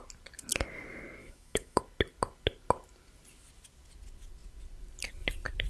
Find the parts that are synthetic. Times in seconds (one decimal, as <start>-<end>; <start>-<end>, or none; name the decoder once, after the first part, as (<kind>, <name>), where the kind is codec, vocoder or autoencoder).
1.2-1.8 (autoencoder, DAC-VAE)